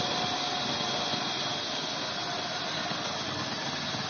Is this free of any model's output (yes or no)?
yes